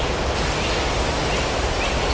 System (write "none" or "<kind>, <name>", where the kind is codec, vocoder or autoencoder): none